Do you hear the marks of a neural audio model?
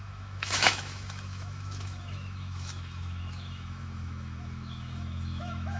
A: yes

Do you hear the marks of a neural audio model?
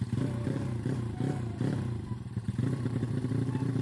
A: yes